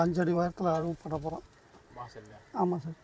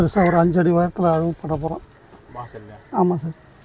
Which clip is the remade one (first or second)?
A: first